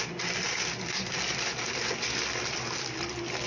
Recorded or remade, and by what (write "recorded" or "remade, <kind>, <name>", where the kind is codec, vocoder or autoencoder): recorded